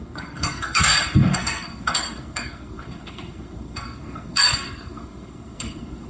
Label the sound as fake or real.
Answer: fake